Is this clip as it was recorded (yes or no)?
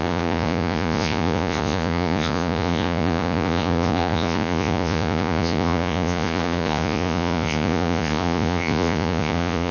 no